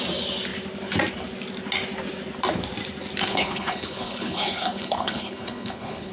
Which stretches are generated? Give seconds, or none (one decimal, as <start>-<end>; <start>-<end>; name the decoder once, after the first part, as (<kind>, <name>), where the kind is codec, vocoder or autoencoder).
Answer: 3.3-6.1 (codec, HILCodec)

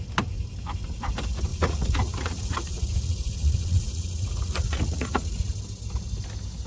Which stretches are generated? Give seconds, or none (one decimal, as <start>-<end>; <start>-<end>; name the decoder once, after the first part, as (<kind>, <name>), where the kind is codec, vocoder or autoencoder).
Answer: 1.5-5.5 (vocoder, Vocos)

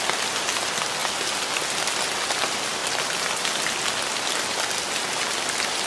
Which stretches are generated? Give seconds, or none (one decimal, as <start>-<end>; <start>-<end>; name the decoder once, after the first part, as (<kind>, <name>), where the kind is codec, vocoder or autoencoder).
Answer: none

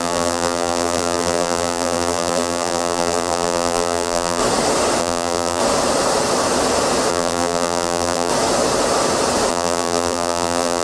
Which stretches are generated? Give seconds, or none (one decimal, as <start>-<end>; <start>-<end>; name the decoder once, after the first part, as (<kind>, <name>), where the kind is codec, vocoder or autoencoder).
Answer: 0.0-4.4 (vocoder, BigVGAN v2); 5.0-5.6; 7.1-8.3; 9.5-10.8

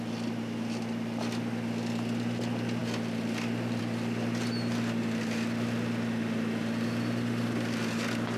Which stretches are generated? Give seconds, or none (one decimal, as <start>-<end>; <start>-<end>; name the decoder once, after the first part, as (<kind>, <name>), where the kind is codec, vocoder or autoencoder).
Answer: none

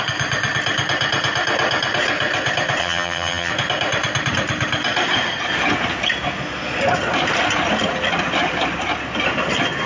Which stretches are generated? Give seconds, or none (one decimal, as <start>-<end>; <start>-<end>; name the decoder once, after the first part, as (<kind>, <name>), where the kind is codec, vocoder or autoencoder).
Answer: 2.8-3.5 (vocoder, HiFi-GAN)

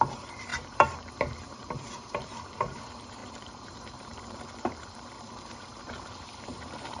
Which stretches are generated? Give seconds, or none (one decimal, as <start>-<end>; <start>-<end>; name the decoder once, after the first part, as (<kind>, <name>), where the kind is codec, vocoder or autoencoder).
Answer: 0.0-7.0 (vocoder, BigVGAN v2)